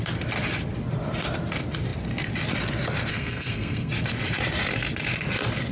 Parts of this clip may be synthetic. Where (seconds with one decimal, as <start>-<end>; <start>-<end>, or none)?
3.1-3.9

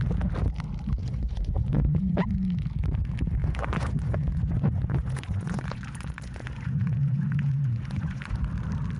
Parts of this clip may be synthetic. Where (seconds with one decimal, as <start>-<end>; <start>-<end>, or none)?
1.0-2.3; 3.4-8.5